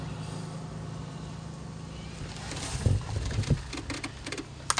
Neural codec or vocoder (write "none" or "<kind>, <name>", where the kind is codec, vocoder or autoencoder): none